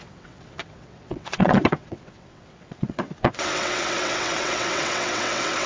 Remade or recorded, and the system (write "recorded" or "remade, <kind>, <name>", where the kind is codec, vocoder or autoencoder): remade, vocoder, WaveNeXt